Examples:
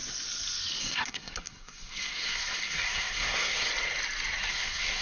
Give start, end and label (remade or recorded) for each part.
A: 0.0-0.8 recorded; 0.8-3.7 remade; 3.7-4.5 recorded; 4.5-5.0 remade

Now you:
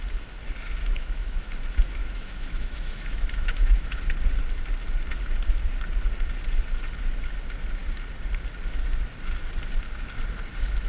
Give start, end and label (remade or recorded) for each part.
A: 0.0-0.8 recorded; 0.8-1.5 remade; 1.5-2.0 recorded; 2.0-4.0 remade; 4.0-10.9 recorded

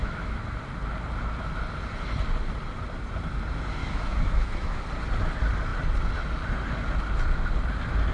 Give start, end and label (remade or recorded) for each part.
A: 0.0-0.6 remade; 0.6-3.8 recorded; 3.8-4.8 remade; 4.8-8.1 recorded

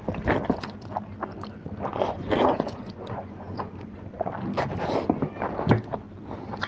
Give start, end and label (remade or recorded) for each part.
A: 0.0-1.9 recorded; 1.9-4.3 remade; 4.3-6.7 recorded